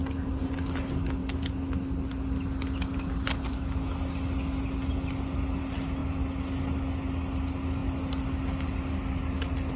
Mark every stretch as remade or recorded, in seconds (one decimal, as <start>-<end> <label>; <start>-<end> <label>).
0.0-9.8 recorded